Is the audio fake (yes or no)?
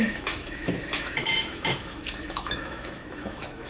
yes